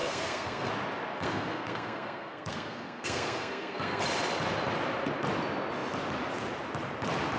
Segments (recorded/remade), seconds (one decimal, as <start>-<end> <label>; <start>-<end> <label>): 0.0-0.7 remade; 0.7-1.1 recorded; 1.1-4.0 remade; 4.0-7.4 recorded